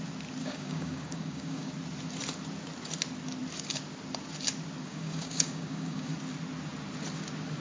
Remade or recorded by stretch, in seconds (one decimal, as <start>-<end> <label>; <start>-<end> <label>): 0.0-0.4 recorded; 0.4-1.7 remade; 1.7-4.8 recorded; 4.8-6.1 remade; 6.1-7.6 recorded